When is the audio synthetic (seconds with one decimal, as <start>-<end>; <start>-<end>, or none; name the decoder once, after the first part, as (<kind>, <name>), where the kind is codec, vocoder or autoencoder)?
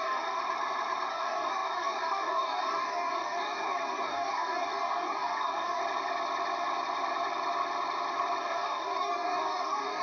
0.0-0.4 (codec, DAC); 1.1-5.8; 8.4-10.0